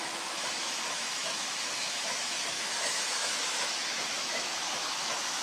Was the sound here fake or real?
fake